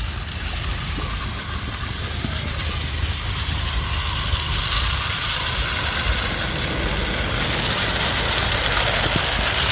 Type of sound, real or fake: real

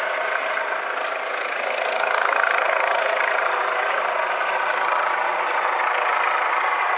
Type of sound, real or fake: real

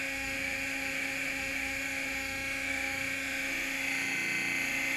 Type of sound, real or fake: fake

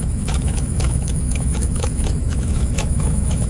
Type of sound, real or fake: fake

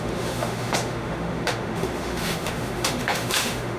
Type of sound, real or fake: fake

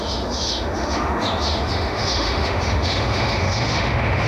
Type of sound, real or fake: fake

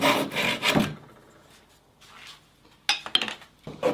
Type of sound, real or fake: real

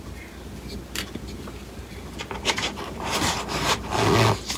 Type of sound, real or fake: real